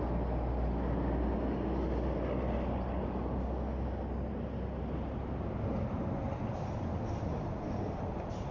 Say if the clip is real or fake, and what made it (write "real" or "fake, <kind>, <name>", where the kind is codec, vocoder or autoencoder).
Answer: real